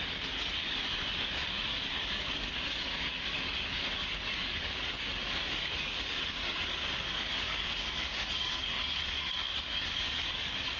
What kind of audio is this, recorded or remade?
remade